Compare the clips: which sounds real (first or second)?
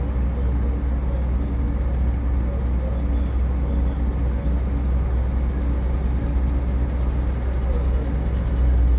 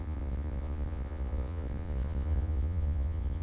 first